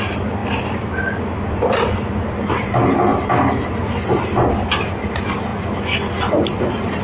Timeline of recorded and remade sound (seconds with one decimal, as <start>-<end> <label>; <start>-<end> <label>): 0.0-0.4 recorded; 0.4-1.5 remade; 1.5-7.0 recorded